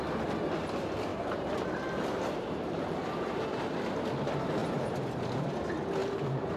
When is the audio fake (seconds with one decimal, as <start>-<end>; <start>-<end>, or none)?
1.1-3.4; 4.6-5.2; 6.0-6.6